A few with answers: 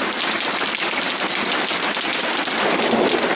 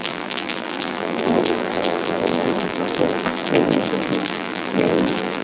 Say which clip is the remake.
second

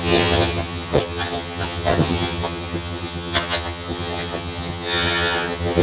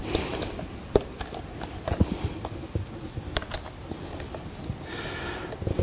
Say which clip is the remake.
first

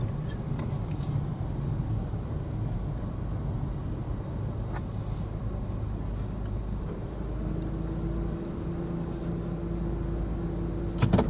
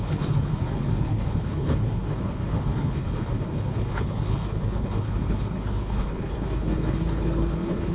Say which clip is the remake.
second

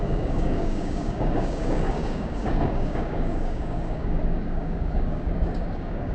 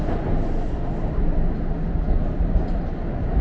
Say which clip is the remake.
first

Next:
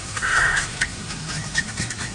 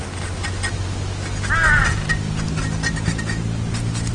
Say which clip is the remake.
first